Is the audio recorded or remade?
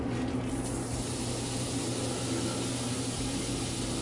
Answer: recorded